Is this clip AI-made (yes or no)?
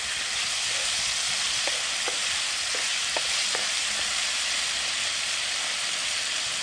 no